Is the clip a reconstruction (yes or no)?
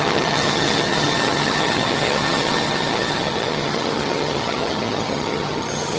yes